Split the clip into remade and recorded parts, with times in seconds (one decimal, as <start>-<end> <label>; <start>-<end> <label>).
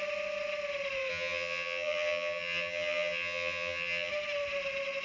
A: 0.0-1.1 recorded; 1.1-4.1 remade; 4.1-5.0 recorded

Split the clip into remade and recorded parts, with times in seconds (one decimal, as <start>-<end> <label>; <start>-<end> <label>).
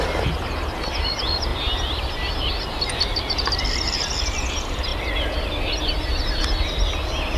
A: 0.0-1.5 recorded; 1.5-2.1 remade; 2.1-7.4 recorded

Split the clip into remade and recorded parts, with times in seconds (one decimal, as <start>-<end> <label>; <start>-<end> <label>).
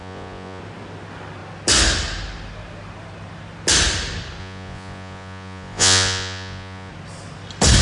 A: 0.0-0.6 remade; 0.6-4.4 recorded; 4.4-6.9 remade; 6.9-7.8 recorded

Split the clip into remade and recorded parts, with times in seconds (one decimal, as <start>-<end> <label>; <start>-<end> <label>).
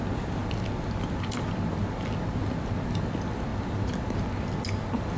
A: 0.0-5.2 recorded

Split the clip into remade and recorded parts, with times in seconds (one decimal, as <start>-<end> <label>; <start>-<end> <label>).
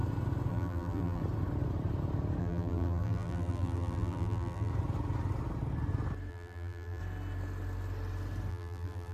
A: 0.0-0.5 recorded; 0.5-1.2 remade; 1.2-2.4 recorded; 2.4-4.7 remade; 4.7-6.3 recorded; 6.3-7.0 remade; 7.0-8.5 recorded; 8.5-9.1 remade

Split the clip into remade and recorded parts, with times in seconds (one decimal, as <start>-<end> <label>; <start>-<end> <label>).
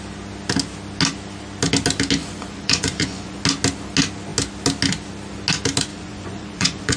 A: 0.0-2.2 recorded; 2.2-3.4 remade; 3.4-5.9 recorded; 5.9-7.0 remade